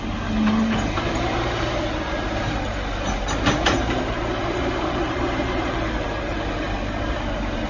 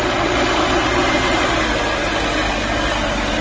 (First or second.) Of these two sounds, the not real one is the first